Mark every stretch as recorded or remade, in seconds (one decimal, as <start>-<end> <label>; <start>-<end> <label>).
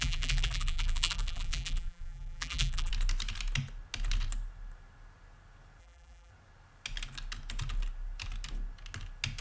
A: 0.0-2.9 remade; 2.9-5.8 recorded; 5.8-6.3 remade; 6.3-9.4 recorded